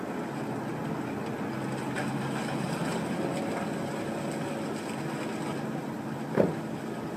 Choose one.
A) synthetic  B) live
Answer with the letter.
B